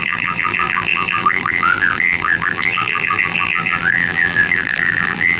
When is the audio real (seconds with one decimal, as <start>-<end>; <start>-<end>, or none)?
none